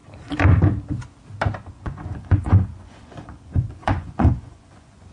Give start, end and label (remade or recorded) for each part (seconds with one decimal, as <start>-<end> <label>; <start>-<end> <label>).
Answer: 0.0-1.7 recorded; 1.7-5.1 remade